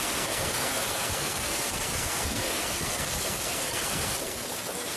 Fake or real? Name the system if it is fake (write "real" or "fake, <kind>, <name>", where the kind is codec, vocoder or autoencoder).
fake, codec, SNAC